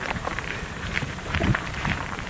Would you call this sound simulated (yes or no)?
yes